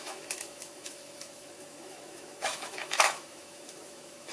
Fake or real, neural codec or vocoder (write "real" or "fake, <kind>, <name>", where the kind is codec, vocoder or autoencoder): fake, autoencoder, DAC-VAE